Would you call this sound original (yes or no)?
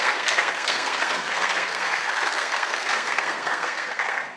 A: no